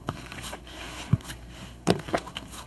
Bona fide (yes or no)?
no